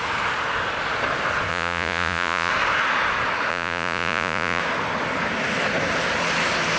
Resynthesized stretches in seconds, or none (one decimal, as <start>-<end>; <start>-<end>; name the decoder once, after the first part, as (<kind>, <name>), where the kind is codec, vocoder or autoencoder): 1.5-2.5 (vocoder, Vocos); 3.5-4.6